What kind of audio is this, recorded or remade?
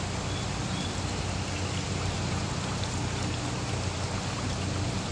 recorded